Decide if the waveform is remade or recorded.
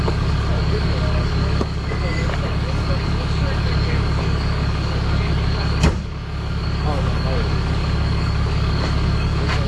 remade